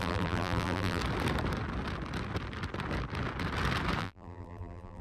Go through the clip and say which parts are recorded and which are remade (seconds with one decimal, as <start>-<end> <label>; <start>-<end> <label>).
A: 0.0-1.0 remade; 1.0-4.0 recorded; 4.0-5.0 remade